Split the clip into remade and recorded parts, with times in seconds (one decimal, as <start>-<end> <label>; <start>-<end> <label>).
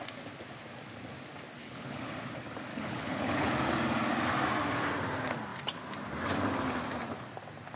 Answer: 0.0-1.6 recorded; 1.6-2.1 remade; 2.1-2.7 recorded; 2.7-3.5 remade; 3.5-7.8 recorded